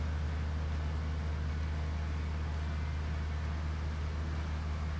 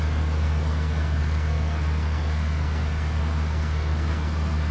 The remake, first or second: second